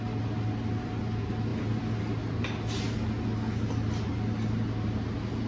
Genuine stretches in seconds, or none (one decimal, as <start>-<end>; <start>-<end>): 0.0-5.5